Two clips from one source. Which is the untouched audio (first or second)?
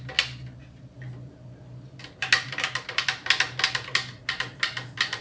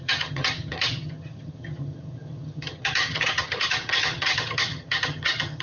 first